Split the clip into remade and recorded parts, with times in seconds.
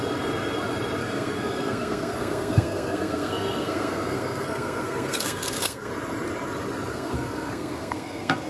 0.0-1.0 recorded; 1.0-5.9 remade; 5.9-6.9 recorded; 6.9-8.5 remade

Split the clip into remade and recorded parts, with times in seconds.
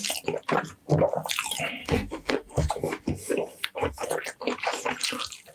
0.0-1.8 recorded; 1.8-2.7 remade; 2.7-3.5 recorded; 3.5-4.1 remade; 4.1-5.5 recorded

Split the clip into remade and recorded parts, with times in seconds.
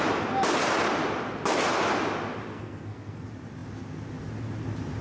0.0-2.5 recorded; 2.5-3.2 remade; 3.2-5.0 recorded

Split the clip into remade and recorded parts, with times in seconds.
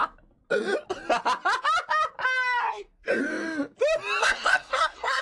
0.0-2.6 recorded; 2.6-3.2 remade; 3.2-4.2 recorded; 4.2-5.2 remade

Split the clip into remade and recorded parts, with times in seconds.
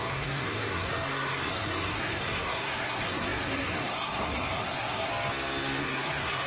0.0-5.1 remade; 5.1-5.8 recorded; 5.8-6.5 remade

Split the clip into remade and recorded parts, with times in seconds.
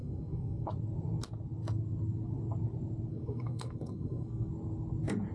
0.0-0.7 remade; 0.7-3.1 recorded; 3.1-4.5 remade; 4.5-5.3 recorded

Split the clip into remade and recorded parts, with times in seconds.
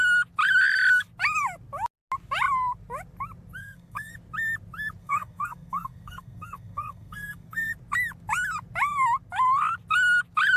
0.0-3.6 recorded; 3.6-4.1 remade; 4.1-5.0 recorded; 5.0-7.7 remade; 7.7-10.6 recorded